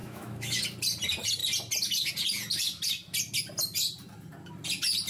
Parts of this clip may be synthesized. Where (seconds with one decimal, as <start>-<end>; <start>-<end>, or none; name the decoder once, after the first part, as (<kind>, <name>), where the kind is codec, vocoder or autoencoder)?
0.0-0.6 (autoencoder, DAC-VAE)